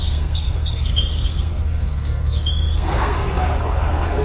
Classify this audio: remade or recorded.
remade